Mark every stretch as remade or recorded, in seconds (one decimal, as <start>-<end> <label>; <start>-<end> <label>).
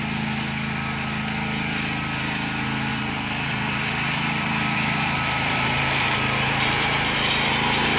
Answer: 0.0-2.9 recorded; 2.9-8.0 remade